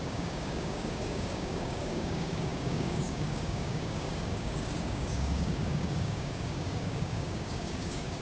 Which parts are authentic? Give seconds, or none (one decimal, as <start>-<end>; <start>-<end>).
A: none